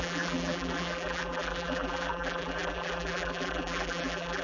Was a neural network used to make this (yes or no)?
yes